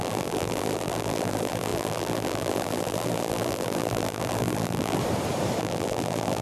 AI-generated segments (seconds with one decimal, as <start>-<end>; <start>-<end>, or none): 0.0-5.0; 5.6-6.4